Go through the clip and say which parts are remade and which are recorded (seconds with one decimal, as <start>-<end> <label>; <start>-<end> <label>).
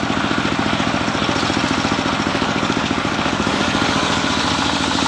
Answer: 0.0-2.3 recorded; 2.3-4.3 remade; 4.3-5.1 recorded